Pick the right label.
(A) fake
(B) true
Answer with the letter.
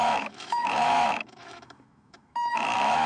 A